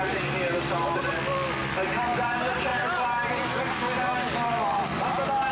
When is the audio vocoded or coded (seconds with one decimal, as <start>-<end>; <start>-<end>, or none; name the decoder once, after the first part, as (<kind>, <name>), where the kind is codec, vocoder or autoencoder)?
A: 1.6-2.3 (vocoder, BigVGAN v2)